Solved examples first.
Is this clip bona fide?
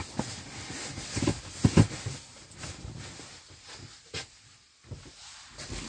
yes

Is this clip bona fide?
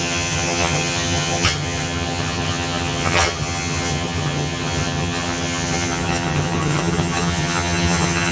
no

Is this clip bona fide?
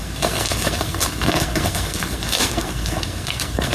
no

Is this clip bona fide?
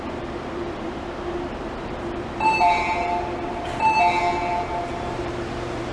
no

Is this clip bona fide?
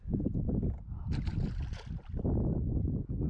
yes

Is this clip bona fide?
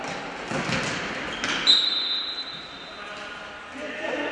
yes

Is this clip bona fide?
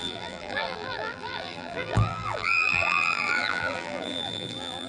no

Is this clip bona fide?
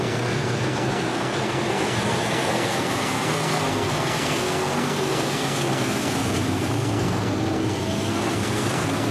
no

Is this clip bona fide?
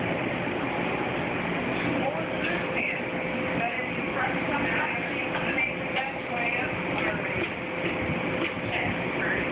yes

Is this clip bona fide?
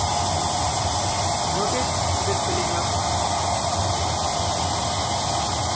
yes